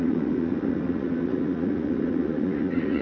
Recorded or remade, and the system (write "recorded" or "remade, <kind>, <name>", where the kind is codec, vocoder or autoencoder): remade, vocoder, Vocos